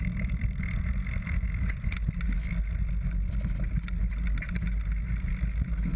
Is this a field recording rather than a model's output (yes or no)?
yes